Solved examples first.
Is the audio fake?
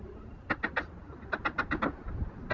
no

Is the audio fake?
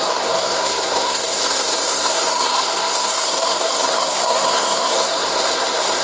yes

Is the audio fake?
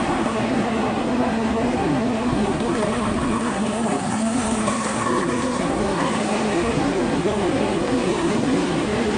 yes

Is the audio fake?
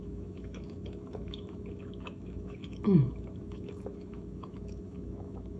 yes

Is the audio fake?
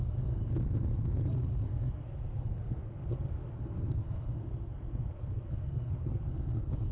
yes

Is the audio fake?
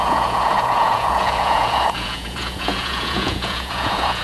yes